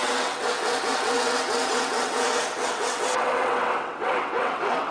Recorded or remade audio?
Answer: remade